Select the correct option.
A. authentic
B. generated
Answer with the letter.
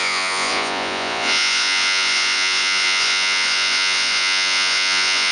B